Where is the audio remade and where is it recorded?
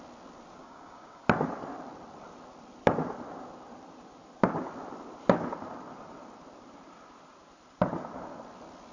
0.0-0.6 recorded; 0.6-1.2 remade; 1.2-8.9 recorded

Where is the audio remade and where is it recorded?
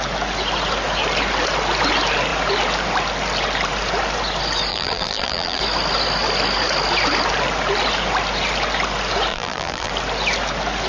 0.0-4.7 recorded; 4.7-5.6 remade; 5.6-9.3 recorded; 9.3-9.9 remade; 9.9-10.9 recorded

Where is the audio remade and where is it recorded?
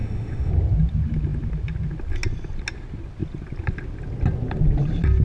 0.0-0.5 remade; 0.5-5.2 recorded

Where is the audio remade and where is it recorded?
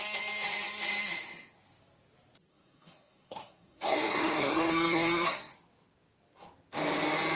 0.0-2.5 recorded; 2.5-5.5 remade; 5.5-7.4 recorded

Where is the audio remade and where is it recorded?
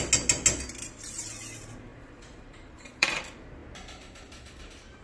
0.0-1.9 recorded; 1.9-3.2 remade; 3.2-5.0 recorded